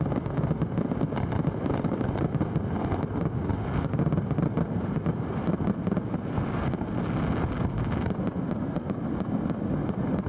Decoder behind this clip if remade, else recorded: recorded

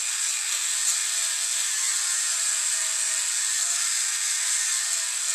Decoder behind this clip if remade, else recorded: recorded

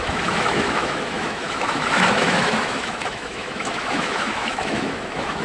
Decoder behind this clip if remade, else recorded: remade, autoencoder, DAC-VAE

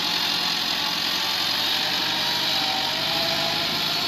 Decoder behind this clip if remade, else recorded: recorded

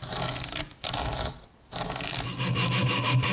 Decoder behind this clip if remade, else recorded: recorded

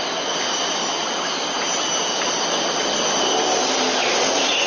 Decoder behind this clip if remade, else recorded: recorded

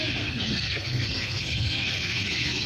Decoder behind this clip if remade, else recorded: remade, codec, SNAC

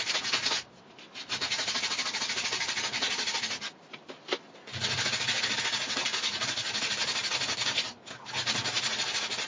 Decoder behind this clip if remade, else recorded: recorded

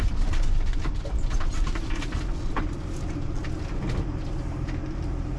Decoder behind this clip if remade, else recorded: recorded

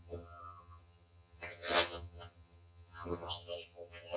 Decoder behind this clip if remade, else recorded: remade, vocoder, HiFi-GAN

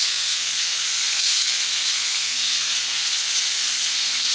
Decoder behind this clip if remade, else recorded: remade, codec, SNAC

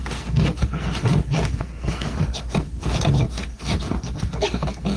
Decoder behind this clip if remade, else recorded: remade, codec, SNAC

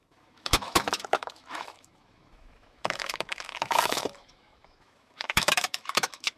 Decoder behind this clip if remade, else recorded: remade, autoencoder, DAC-VAE